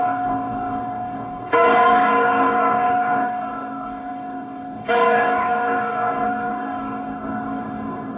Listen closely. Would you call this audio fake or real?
fake